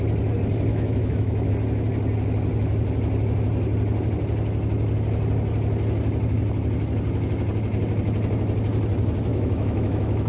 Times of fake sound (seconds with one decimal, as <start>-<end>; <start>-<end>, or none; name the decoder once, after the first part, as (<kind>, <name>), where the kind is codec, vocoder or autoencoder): 0.7-1.5 (autoencoder, DAC-VAE); 9.3-10.3